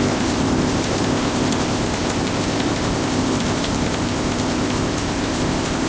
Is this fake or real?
fake